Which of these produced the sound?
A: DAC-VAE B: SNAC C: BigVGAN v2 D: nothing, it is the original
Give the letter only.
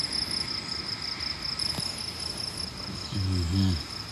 D